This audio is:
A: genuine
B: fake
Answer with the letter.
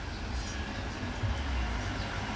A